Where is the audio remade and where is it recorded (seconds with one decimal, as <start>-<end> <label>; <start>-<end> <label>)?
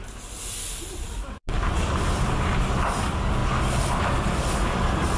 0.0-3.4 remade; 3.4-4.0 recorded; 4.0-5.2 remade